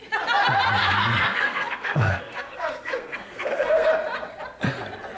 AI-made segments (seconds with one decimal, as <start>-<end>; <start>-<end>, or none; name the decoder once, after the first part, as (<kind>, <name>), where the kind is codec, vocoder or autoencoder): 0.8-3.9 (codec, SNAC)